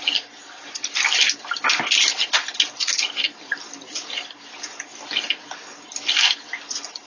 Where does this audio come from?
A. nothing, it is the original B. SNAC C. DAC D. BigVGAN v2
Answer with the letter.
A